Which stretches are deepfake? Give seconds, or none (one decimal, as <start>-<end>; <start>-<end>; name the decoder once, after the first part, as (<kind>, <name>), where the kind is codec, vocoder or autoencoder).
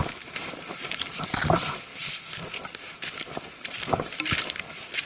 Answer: none